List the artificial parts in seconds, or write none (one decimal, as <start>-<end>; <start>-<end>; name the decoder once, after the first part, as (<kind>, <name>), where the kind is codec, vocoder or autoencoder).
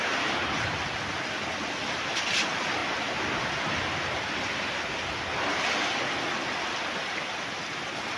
none